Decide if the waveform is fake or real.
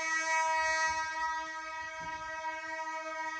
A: real